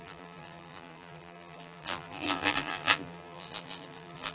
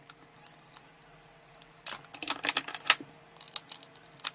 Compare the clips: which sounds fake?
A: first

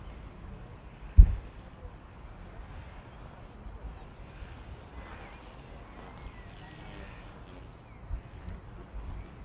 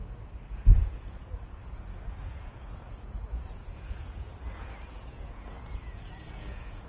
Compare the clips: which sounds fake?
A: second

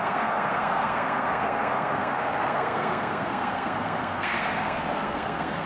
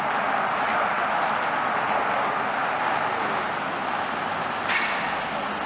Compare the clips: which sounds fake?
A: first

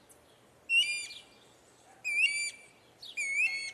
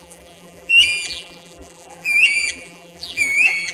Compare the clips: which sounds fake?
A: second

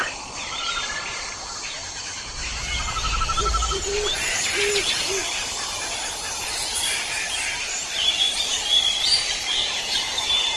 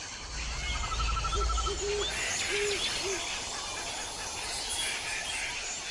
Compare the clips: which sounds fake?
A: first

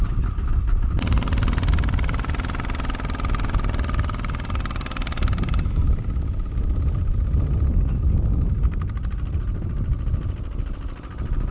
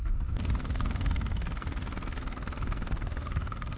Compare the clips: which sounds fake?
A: second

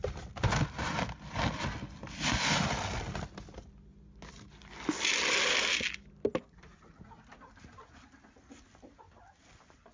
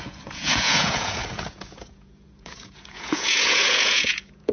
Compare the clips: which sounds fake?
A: second